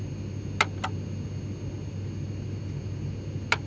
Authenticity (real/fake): real